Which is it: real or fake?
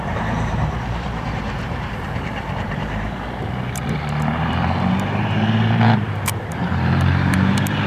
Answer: fake